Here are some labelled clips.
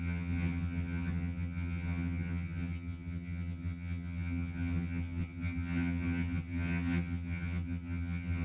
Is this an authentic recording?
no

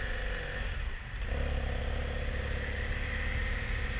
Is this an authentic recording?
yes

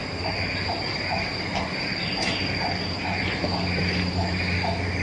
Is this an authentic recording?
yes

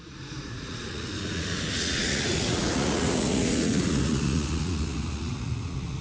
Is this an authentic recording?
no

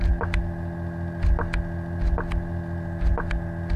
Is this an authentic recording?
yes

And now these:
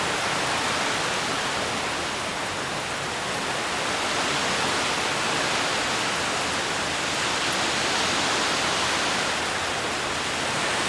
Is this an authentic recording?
yes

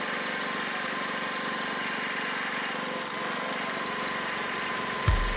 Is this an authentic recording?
no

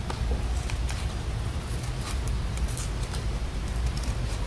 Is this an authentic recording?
yes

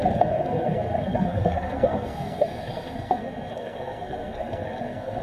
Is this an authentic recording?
no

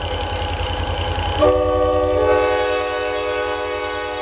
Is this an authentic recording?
yes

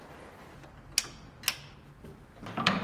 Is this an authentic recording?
yes